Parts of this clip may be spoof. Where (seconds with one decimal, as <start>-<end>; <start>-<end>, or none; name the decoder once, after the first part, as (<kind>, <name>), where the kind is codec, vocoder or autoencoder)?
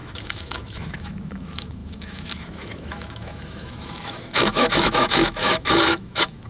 0.0-6.5 (autoencoder, DAC-VAE)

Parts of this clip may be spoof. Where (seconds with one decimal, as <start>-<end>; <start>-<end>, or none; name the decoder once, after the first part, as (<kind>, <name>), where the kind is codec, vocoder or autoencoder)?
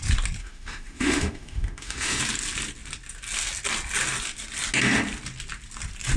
0.4-2.2 (autoencoder, DAC-VAE)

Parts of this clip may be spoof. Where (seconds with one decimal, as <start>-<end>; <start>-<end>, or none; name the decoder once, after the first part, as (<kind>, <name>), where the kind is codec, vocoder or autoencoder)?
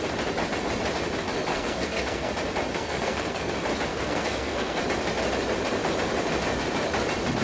1.5-2.3 (codec, SNAC); 2.7-3.5; 3.9-4.8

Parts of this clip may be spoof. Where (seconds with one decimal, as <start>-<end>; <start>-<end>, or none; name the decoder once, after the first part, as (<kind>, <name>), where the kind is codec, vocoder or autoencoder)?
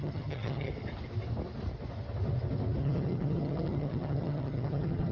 0.0-0.7 (vocoder, HiFi-GAN); 2.8-5.1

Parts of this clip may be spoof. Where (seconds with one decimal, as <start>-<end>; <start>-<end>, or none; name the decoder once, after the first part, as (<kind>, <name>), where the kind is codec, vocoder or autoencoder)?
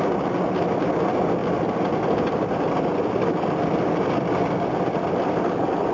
none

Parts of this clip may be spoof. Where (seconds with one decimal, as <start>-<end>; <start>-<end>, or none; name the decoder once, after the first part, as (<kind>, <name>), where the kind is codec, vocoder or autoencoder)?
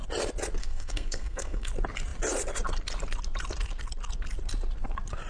0.6-1.7 (codec, SNAC)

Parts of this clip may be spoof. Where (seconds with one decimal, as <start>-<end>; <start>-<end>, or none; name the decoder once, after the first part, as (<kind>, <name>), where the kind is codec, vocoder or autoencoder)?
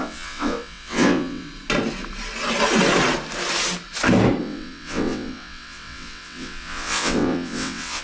0.0-1.5 (vocoder, WaveNeXt); 4.4-8.0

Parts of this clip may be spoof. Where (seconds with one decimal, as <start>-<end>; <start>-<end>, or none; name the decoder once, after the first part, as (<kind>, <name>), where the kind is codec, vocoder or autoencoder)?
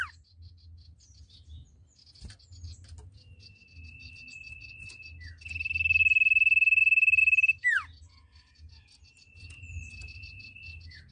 none